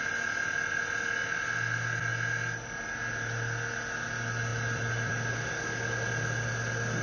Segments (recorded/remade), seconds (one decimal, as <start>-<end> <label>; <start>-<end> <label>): 0.0-4.5 recorded; 4.5-5.1 remade; 5.1-7.0 recorded